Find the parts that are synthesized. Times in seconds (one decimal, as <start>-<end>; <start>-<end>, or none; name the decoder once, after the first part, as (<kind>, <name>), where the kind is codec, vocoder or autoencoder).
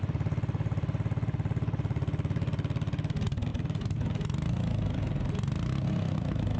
none